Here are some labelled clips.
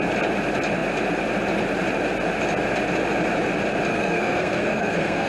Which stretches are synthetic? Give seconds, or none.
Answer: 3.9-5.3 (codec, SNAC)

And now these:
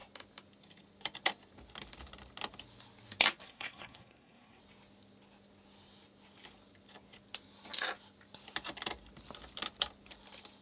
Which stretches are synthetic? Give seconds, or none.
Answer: 3.4-4.6 (codec, SNAC)

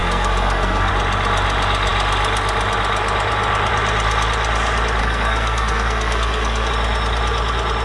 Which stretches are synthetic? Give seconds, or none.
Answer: 0.0-0.9 (codec, SNAC); 5.0-6.7

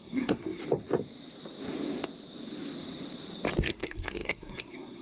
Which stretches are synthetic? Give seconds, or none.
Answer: 0.0-0.6 (codec, SNAC); 3.6-5.0

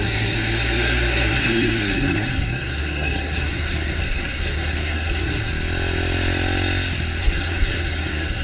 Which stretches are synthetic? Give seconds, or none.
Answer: 0.0-5.5 (codec, SNAC); 7.2-8.4

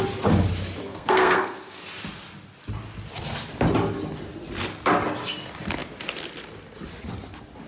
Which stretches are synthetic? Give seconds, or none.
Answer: 0.8-1.8 (codec, SNAC)

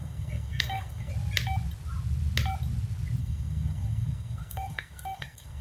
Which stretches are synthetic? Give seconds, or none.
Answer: 0.0-1.1 (codec, SNAC); 3.2-5.6